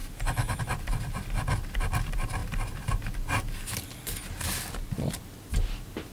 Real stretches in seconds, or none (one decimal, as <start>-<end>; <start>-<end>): 0.0-6.1